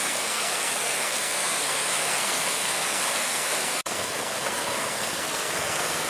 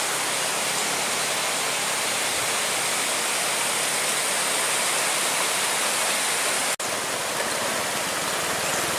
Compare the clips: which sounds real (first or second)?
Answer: second